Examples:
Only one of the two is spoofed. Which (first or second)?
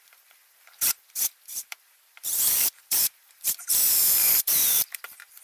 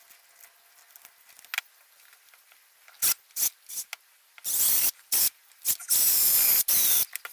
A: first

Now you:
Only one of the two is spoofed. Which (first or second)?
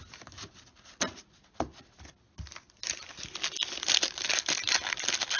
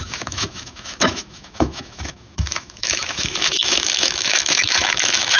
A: second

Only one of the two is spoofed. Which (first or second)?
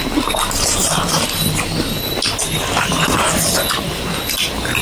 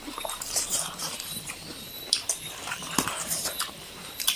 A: second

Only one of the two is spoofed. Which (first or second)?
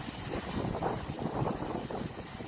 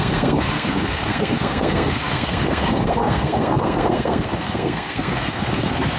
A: second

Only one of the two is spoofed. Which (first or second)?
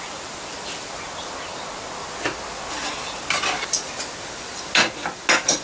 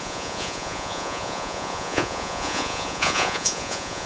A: second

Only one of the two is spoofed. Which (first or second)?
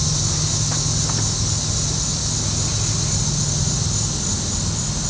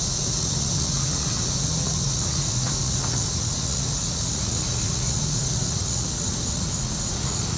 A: second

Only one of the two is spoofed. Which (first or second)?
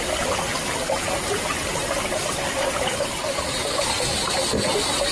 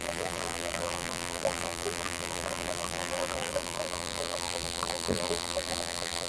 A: second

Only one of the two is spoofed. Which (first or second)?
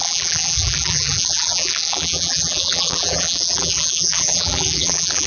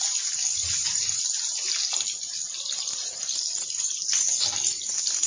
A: first